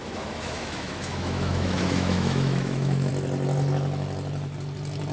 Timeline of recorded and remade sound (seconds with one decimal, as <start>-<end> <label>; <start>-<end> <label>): 0.0-3.1 remade; 3.1-5.1 recorded